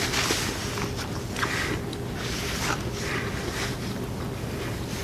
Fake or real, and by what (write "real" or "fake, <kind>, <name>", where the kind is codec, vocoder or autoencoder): real